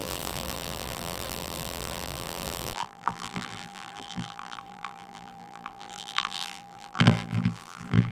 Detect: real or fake fake